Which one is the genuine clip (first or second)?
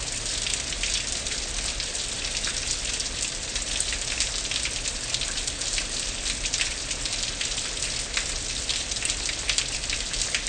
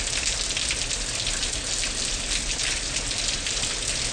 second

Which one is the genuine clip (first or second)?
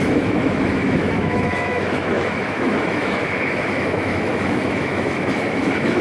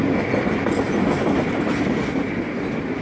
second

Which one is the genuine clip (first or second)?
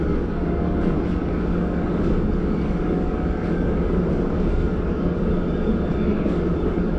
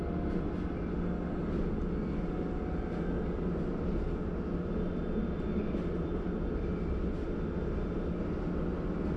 second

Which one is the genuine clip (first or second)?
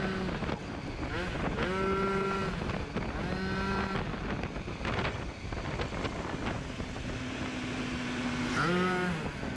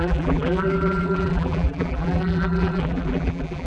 first